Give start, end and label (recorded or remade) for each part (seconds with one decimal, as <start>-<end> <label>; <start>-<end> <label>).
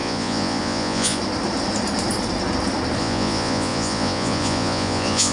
0.0-1.2 remade; 1.2-3.0 recorded; 3.0-5.3 remade